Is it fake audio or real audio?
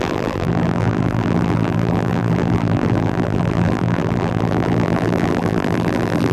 fake